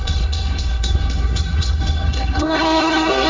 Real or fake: fake